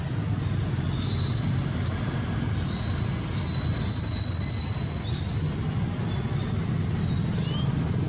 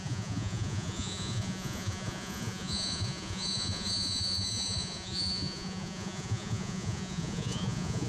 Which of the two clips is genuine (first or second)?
first